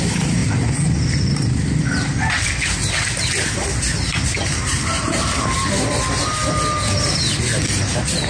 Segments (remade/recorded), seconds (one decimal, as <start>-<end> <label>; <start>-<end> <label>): 0.0-0.4 remade; 0.4-1.3 recorded; 1.3-2.1 remade; 2.1-4.4 recorded; 4.4-6.4 remade; 6.4-8.3 recorded